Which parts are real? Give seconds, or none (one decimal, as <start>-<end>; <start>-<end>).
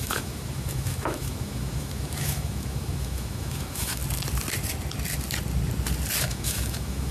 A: 4.0-6.2